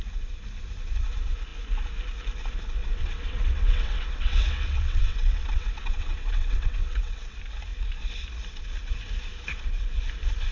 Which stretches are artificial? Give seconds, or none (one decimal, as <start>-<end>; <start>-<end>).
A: 2.8-7.3